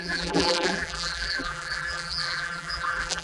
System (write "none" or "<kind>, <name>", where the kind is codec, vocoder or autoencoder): vocoder, BigVGAN v2